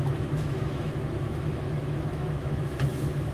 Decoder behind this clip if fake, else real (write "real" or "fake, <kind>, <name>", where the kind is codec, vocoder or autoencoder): fake, autoencoder, DAC-VAE